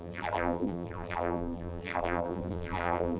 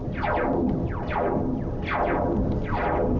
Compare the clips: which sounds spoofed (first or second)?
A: first